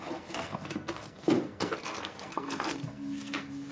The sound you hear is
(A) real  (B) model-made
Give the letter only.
B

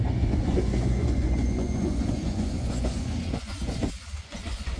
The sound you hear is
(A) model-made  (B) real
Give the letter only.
A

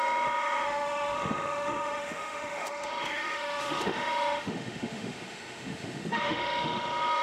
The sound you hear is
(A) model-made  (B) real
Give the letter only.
A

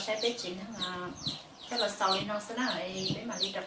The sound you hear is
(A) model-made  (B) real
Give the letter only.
B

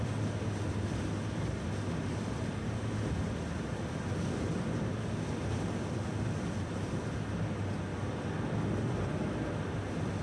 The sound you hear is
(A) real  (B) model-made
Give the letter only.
A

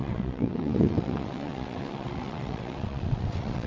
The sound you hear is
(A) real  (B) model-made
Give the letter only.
B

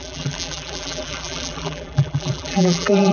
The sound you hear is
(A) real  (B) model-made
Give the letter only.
B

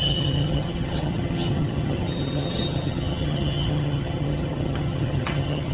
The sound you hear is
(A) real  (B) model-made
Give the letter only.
B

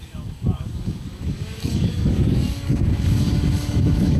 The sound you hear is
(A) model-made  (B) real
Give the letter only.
A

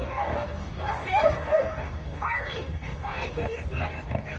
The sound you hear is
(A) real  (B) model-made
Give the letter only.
B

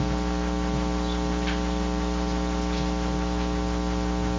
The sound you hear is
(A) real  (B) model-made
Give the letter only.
A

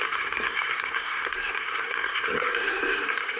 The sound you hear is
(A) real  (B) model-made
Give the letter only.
B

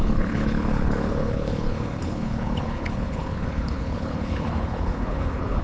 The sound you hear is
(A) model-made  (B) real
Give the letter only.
A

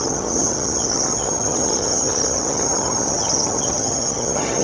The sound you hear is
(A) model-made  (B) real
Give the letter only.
A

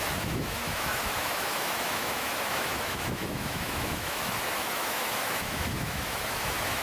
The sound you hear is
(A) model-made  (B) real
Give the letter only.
A